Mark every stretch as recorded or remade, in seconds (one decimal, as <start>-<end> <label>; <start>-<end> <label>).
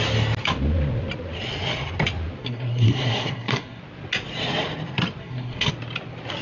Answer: 0.0-2.4 recorded; 2.4-3.8 remade; 3.8-5.2 recorded; 5.2-5.7 remade; 5.7-6.4 recorded